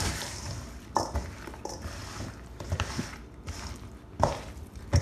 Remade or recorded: recorded